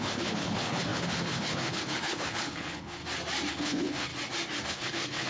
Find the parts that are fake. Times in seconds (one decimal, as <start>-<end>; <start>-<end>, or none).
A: 0.0-3.0; 3.5-4.1; 4.7-5.3